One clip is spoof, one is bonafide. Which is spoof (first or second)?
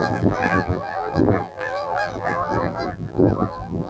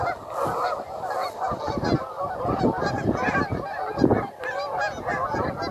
first